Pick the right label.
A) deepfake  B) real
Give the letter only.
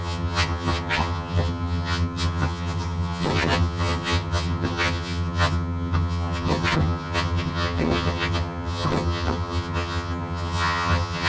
A